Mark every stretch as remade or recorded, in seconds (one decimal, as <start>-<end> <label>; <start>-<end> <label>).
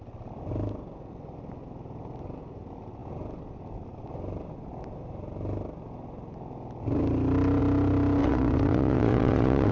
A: 0.0-8.2 recorded; 8.2-9.7 remade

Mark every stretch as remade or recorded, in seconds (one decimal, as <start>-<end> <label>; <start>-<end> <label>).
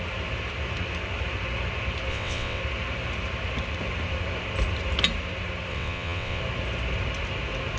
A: 0.0-2.1 recorded; 2.1-2.6 remade; 2.6-5.7 recorded; 5.7-6.4 remade; 6.4-7.8 recorded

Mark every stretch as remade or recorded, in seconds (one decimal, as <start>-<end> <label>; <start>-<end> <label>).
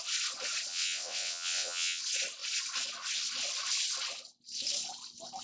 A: 0.0-0.7 recorded; 0.7-2.0 remade; 2.0-5.4 recorded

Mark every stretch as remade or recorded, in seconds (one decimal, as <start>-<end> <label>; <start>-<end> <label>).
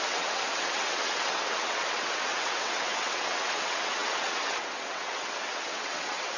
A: 0.0-6.4 remade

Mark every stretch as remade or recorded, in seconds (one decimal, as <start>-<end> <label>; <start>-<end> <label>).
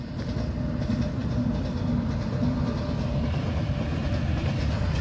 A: 0.0-5.0 recorded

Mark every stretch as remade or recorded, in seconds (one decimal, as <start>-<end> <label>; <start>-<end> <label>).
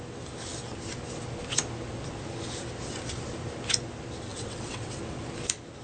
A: 0.0-4.3 recorded; 4.3-5.0 remade; 5.0-5.8 recorded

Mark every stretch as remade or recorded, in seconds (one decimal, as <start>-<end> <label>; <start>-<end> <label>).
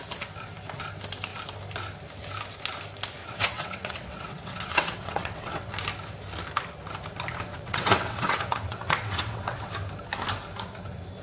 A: 0.0-3.2 recorded; 3.2-5.7 remade; 5.7-7.5 recorded; 7.5-9.7 remade; 9.7-11.2 recorded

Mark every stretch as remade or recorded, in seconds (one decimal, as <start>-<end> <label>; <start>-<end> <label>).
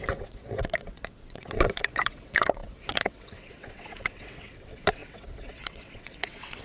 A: 0.0-6.6 remade